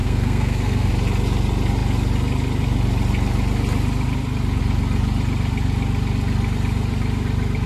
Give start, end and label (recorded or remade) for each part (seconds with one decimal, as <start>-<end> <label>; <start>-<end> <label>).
0.0-0.9 remade; 0.9-7.7 recorded